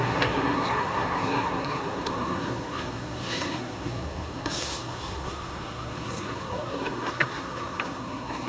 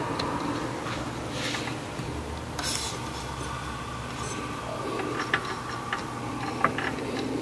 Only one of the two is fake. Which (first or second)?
first